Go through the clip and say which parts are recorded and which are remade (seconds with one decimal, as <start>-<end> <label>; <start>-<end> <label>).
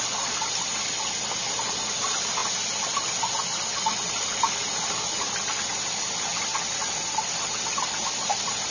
0.0-8.7 recorded